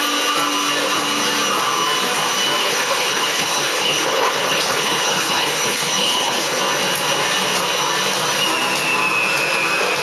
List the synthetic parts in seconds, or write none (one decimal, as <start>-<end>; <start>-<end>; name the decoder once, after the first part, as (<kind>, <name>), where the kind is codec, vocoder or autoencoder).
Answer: 2.6-6.6 (codec, HILCodec)